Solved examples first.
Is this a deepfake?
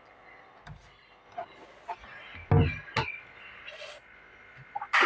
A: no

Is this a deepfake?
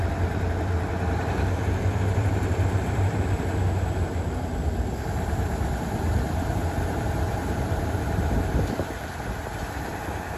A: yes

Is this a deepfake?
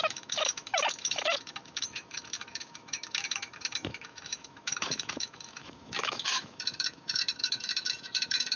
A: yes